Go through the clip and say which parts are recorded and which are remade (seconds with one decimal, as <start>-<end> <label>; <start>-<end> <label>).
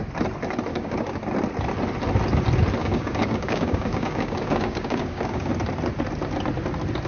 0.0-0.7 recorded; 0.7-1.2 remade; 1.2-2.8 recorded; 2.8-5.5 remade; 5.5-7.1 recorded